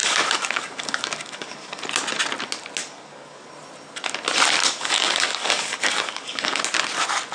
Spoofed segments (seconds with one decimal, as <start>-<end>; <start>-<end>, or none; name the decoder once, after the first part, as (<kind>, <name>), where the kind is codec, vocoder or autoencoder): 0.0-1.8 (codec, DAC); 2.8-3.5; 4.6-6.6